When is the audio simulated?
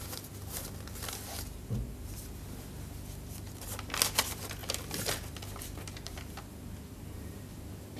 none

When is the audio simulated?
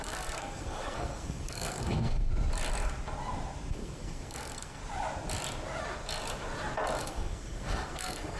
0.0-2.3; 3.7-4.8; 7.0-8.4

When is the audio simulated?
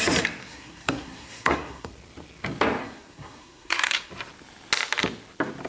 0.4-1.9; 2.8-4.1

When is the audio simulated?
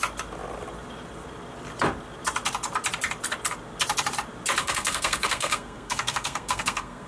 4.6-7.1